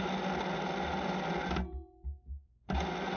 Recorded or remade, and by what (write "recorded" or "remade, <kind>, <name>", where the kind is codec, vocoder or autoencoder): recorded